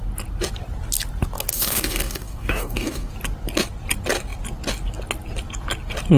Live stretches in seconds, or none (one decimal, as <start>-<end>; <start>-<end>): 0.0-1.5; 3.1-6.2